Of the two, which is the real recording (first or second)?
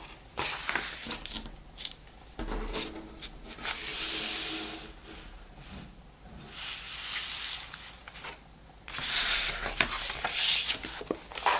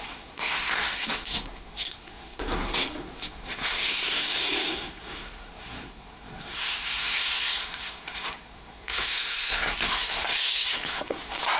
first